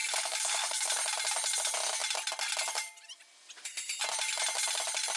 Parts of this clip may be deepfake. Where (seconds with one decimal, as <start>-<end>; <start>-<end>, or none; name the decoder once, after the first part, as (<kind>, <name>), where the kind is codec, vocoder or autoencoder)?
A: 0.0-0.9 (codec, DAC)